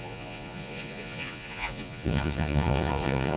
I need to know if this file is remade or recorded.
remade